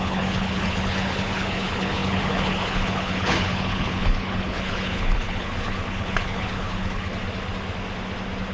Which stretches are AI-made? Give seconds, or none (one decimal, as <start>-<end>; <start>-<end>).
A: 0.0-7.1